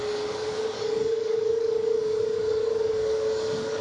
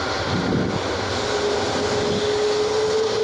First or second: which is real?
second